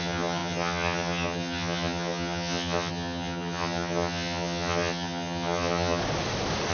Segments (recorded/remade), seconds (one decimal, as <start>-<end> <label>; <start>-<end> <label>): 0.0-6.0 remade; 6.0-6.7 recorded